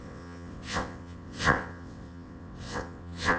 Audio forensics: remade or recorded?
remade